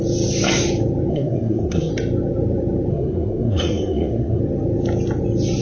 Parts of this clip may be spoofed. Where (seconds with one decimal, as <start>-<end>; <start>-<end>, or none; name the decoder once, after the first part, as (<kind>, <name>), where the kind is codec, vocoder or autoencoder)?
1.1-1.9 (codec, SNAC); 2.9-4.4